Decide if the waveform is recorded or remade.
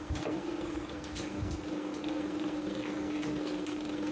remade